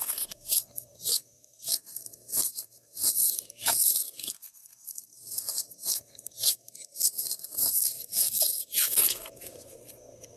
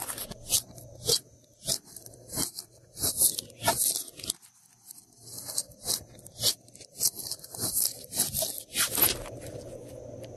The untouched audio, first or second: second